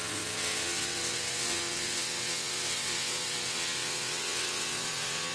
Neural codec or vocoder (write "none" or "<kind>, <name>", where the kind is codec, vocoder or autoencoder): vocoder, WaveNeXt